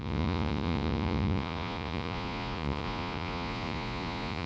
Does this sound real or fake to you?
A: fake